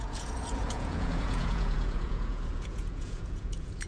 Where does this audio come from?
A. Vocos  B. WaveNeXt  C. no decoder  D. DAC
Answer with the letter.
A